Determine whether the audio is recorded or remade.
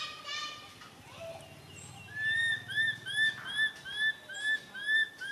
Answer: recorded